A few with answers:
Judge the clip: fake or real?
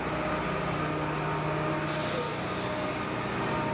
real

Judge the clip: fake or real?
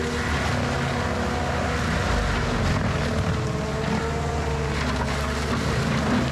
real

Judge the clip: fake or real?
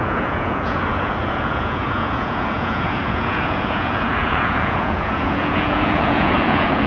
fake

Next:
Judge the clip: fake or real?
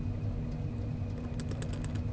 real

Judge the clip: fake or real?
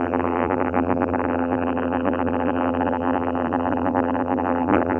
fake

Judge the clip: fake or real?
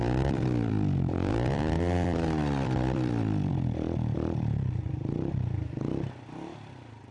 fake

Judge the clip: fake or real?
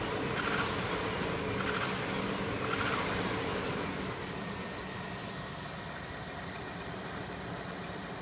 real